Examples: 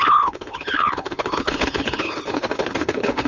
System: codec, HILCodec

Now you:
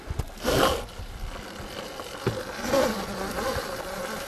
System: none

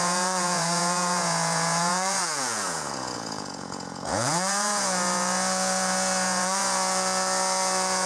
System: vocoder, Vocos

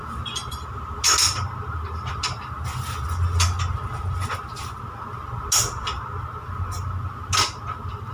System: none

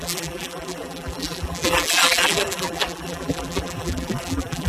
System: vocoder, BigVGAN v2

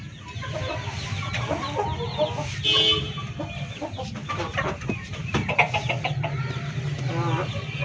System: none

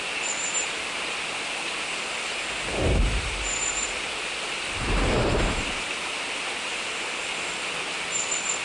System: none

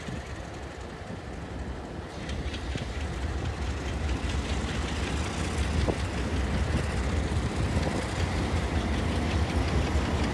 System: none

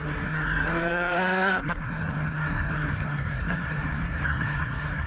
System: codec, SNAC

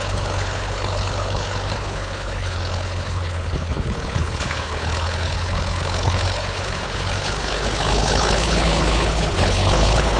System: codec, HILCodec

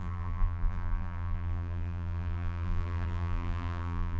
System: vocoder, BigVGAN v2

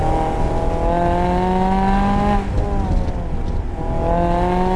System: none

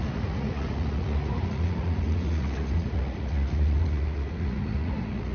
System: vocoder, Vocos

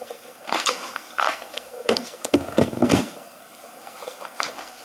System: codec, SNAC